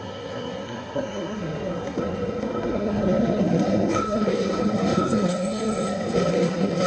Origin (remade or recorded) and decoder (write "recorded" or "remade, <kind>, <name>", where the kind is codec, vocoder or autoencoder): remade, codec, SNAC